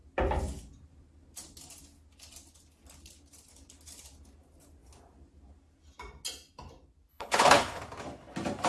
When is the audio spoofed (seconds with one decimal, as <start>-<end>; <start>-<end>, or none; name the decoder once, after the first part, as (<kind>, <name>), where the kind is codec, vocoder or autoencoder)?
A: 7.1-7.8 (codec, HILCodec)